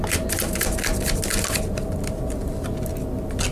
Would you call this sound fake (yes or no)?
no